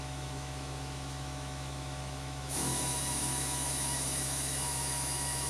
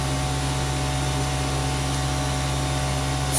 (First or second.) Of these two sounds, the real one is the second